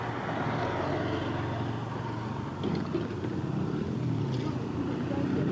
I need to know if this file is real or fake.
real